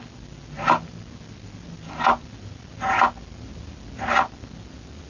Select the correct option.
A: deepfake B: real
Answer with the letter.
B